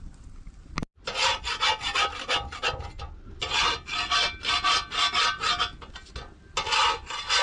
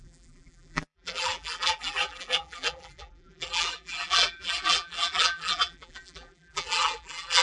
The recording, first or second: first